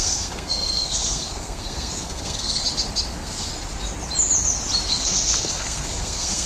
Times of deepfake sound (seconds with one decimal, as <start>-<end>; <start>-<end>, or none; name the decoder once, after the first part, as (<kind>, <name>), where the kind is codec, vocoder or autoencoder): 0.0-2.6 (codec, SNAC); 3.1-3.5; 4.9-6.5